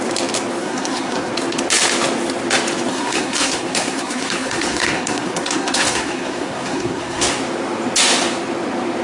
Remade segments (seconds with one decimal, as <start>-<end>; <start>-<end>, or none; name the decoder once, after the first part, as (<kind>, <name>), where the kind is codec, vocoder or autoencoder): 0.6-1.3 (codec, SNAC); 2.9-7.4

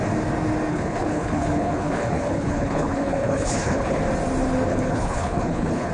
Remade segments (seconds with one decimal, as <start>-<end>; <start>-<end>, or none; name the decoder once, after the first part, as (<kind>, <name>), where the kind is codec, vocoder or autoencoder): 0.7-4.0 (codec, HILCodec); 4.7-5.9

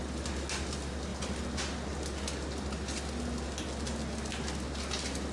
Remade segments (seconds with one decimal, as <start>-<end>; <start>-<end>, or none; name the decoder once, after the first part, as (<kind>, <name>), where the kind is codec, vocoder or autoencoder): none

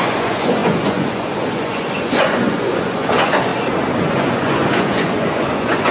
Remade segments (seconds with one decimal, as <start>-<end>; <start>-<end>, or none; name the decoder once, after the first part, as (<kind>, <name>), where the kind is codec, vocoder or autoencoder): 0.0-3.5 (vocoder, Vocos); 4.0-5.9

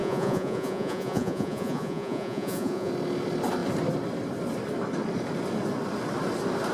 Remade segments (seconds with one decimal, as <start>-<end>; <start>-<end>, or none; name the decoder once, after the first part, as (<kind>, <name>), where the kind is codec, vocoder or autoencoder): 0.0-2.9 (vocoder, Vocos)